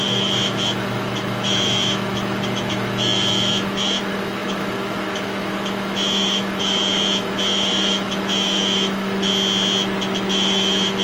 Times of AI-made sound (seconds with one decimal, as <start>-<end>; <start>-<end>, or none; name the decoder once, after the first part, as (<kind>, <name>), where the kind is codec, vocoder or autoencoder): 0.0-9.3 (autoencoder, DAC-VAE); 10.3-11.0